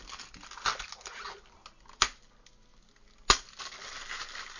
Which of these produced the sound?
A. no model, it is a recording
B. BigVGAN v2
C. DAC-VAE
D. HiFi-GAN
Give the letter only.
A